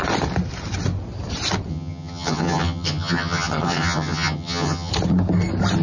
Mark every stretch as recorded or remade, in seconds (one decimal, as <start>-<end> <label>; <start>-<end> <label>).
0.0-1.7 recorded; 1.7-4.9 remade; 4.9-5.8 recorded